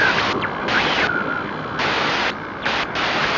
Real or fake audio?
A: real